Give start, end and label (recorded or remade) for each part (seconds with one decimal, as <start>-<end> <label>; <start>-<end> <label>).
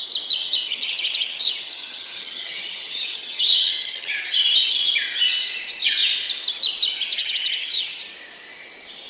0.0-0.4 recorded; 0.4-4.9 remade; 4.9-7.2 recorded; 7.2-8.0 remade; 8.0-9.1 recorded